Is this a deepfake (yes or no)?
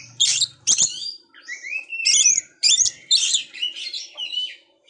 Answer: yes